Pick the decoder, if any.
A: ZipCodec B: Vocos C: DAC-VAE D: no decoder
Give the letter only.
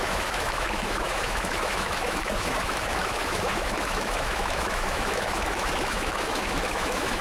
C